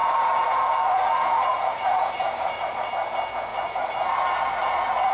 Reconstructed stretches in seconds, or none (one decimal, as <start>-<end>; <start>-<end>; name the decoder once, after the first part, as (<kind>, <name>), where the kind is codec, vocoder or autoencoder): 0.0-2.9 (vocoder, Vocos); 3.5-5.1

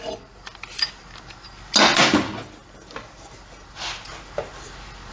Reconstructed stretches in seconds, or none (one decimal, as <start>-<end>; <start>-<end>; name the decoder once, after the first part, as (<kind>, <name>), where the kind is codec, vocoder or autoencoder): none

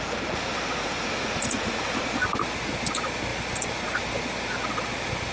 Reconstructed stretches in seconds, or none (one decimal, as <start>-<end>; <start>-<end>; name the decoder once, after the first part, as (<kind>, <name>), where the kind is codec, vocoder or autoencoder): 0.8-2.1 (vocoder, Vocos)

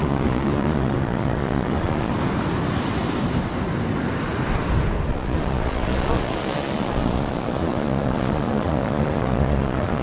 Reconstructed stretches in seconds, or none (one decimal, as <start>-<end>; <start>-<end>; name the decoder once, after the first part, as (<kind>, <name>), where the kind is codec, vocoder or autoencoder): 0.0-2.1 (vocoder, Vocos); 5.1-10.0

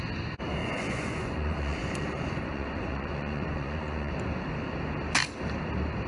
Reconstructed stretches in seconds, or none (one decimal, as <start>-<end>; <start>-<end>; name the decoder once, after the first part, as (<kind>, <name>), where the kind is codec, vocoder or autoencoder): 0.6-4.1 (vocoder, Vocos)

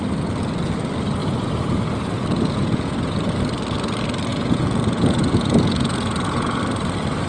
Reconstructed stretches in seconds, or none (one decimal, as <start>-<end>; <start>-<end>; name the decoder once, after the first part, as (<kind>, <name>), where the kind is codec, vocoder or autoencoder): 1.2-3.3 (vocoder, Vocos); 4.3-6.6